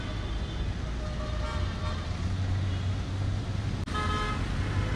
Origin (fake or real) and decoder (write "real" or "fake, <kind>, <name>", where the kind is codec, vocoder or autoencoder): real